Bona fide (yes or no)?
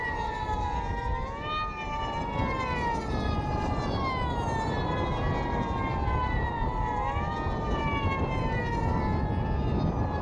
yes